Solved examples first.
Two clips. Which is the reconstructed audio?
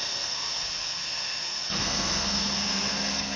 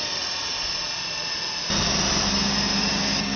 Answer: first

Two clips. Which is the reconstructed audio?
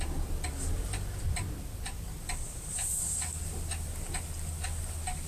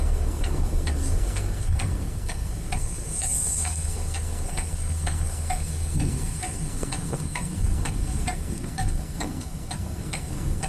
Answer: second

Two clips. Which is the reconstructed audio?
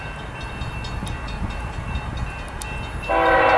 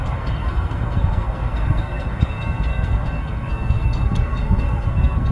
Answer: second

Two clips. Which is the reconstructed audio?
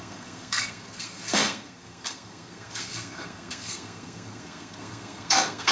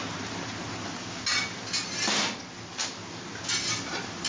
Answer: first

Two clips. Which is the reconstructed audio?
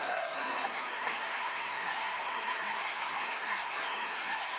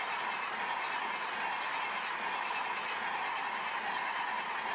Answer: first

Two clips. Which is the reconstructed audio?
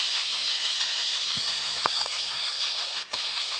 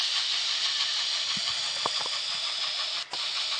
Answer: first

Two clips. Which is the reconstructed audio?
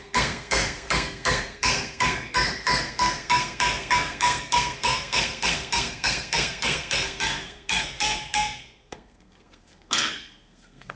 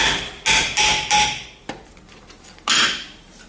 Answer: first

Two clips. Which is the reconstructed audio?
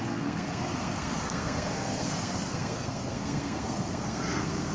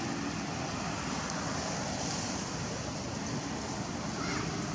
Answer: first